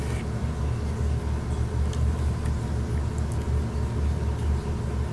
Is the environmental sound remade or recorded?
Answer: recorded